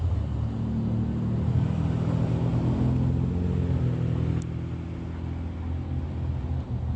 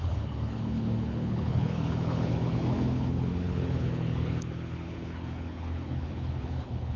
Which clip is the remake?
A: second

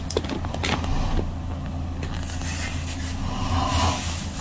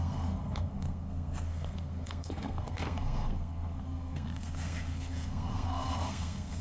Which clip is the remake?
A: second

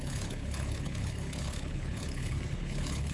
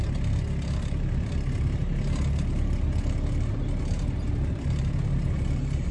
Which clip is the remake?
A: first